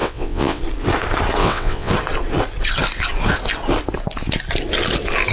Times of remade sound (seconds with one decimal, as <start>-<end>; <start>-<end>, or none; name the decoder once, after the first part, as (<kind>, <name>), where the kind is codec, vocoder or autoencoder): 0.0-0.6 (vocoder, WaveNeXt); 1.4-1.9